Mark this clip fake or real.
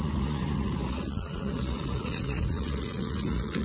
fake